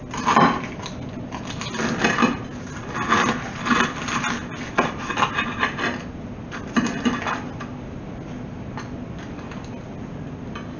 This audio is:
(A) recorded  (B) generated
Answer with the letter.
A